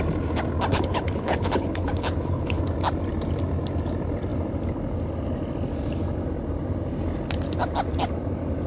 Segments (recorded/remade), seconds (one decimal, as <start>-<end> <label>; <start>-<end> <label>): 0.0-0.7 recorded; 0.7-2.6 remade; 2.6-8.7 recorded